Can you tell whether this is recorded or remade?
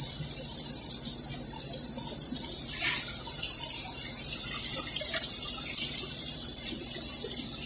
remade